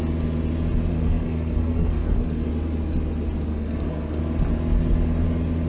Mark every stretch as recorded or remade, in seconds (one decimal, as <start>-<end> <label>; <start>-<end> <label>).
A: 0.0-0.9 recorded; 0.9-2.5 remade; 2.5-3.5 recorded; 3.5-4.2 remade; 4.2-5.7 recorded